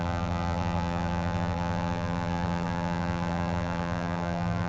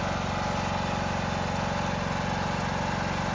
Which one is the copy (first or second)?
first